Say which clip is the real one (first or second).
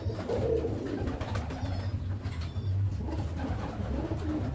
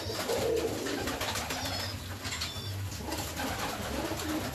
second